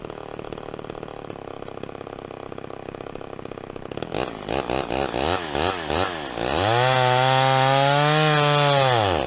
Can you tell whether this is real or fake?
real